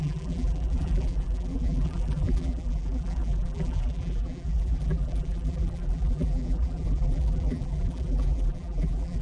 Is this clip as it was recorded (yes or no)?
no